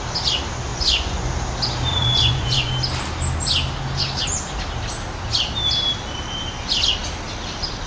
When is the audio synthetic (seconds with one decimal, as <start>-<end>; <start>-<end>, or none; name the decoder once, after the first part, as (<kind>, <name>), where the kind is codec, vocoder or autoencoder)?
0.7-1.3 (vocoder, Vocos); 1.9-2.7